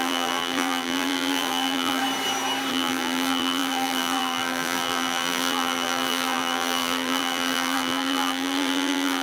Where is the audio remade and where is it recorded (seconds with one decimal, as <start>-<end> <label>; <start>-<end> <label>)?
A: 0.0-2.0 remade; 2.0-2.7 recorded; 2.7-9.2 remade